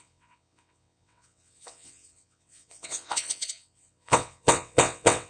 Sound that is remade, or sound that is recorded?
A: remade